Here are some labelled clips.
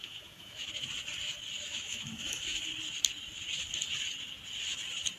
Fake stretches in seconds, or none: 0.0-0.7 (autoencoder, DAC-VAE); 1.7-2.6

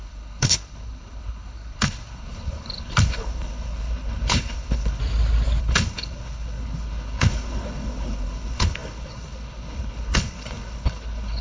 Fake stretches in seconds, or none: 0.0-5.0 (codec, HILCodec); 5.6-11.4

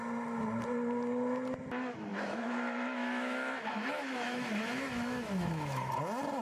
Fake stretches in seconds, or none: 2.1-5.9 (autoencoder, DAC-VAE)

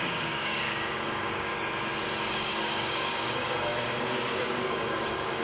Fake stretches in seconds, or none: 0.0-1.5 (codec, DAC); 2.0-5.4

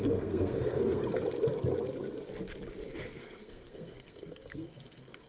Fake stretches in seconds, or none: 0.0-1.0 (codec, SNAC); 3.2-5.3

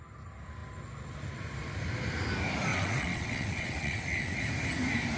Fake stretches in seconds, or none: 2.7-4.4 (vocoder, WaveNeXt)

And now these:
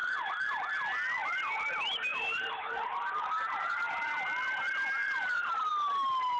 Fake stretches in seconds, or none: 0.0-0.7 (vocoder, BigVGAN v2); 2.1-4.1; 5.0-5.7

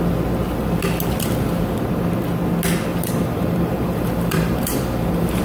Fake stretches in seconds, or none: 2.9-5.4 (vocoder, BigVGAN v2)